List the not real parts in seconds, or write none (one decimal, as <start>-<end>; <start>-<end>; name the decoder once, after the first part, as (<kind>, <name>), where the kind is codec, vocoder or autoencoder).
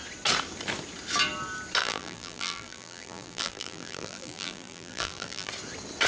1.8-5.5 (vocoder, BigVGAN v2)